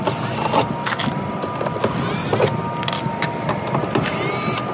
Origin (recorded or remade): recorded